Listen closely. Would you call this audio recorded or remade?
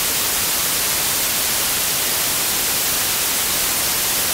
recorded